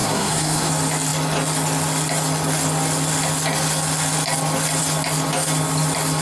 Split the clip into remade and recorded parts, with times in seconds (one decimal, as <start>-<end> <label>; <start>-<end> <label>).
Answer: 0.0-0.7 remade; 0.7-6.2 recorded